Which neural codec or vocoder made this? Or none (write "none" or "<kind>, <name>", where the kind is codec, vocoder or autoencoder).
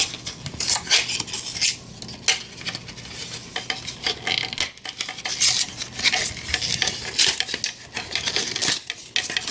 none